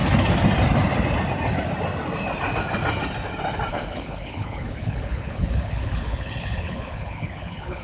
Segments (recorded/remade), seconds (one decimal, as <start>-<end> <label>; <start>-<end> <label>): 0.0-3.7 recorded; 3.7-7.8 remade